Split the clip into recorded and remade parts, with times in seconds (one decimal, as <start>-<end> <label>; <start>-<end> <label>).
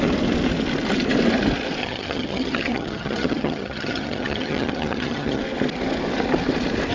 0.0-1.8 recorded; 1.8-5.4 remade; 5.4-6.9 recorded